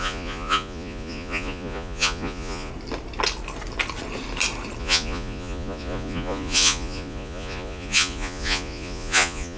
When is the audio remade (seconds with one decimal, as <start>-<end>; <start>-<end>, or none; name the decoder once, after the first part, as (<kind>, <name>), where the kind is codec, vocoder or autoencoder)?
0.0-2.7 (vocoder, Vocos); 4.8-9.6